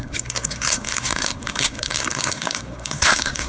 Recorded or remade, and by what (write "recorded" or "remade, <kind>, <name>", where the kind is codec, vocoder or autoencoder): remade, codec, SNAC